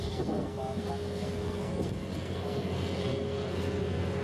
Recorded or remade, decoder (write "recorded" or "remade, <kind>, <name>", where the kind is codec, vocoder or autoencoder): remade, codec, SNAC